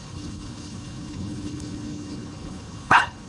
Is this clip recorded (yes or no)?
no